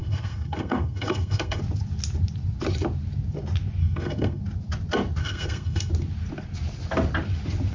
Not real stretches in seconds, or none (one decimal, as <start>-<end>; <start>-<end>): 0.0-1.6; 3.8-4.4; 5.2-5.9